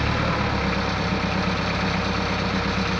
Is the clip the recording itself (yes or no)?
yes